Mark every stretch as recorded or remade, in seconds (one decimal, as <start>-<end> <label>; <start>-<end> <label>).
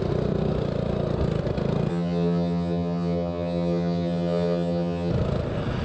0.0-1.9 recorded; 1.9-5.1 remade; 5.1-5.8 recorded